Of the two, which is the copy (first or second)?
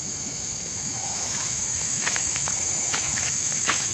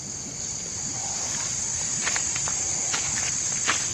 first